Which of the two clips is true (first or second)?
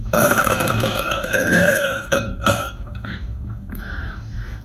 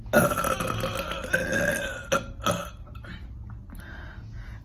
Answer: second